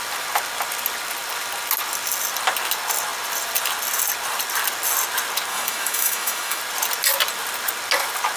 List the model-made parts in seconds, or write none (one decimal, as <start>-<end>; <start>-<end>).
5.5-6.6